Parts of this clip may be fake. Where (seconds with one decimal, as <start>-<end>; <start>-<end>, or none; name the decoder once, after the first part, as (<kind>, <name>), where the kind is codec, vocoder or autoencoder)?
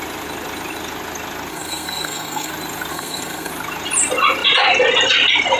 1.5-2.5 (codec, SNAC); 2.9-3.5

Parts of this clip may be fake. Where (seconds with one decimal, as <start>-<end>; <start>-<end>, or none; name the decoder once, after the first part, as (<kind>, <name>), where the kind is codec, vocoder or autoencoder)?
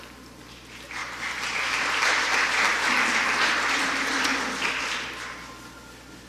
none